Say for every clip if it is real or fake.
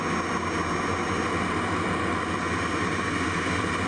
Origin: real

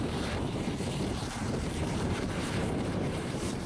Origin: fake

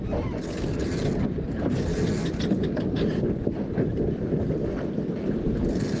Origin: real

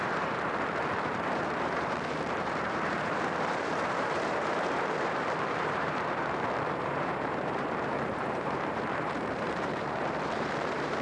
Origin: fake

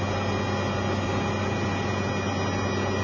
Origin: real